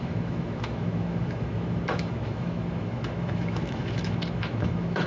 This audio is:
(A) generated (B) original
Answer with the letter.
A